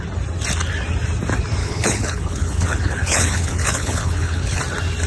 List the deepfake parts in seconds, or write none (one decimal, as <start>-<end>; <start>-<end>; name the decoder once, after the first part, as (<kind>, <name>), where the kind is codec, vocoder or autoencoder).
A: 1.6-4.6 (codec, HILCodec)